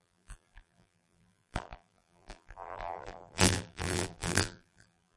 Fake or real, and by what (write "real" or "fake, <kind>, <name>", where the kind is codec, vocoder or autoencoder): fake, vocoder, BigVGAN v2